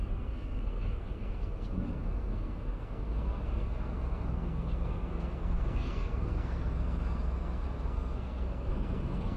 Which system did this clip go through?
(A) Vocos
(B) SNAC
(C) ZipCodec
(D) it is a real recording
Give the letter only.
B